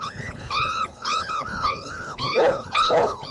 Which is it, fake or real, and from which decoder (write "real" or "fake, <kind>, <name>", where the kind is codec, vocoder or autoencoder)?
fake, codec, HILCodec